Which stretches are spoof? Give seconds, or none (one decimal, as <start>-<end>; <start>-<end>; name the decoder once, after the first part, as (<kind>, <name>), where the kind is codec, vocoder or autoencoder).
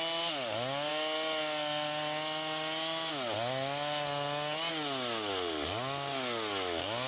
none